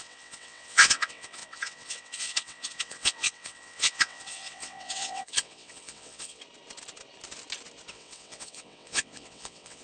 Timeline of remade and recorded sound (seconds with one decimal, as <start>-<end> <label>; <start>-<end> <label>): 0.0-6.4 remade; 6.4-7.9 recorded; 7.9-9.8 remade